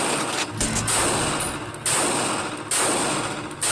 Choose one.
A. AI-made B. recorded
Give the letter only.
B